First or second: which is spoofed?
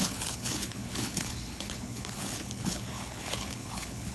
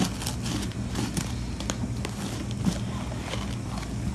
first